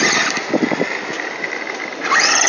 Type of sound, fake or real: real